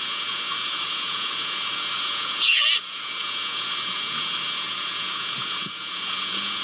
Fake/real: fake